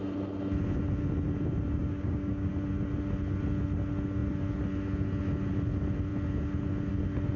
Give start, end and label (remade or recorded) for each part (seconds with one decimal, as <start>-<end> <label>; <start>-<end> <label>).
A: 0.0-1.8 recorded; 1.8-2.5 remade; 2.5-7.4 recorded